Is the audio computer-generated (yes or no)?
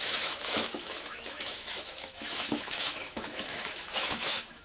yes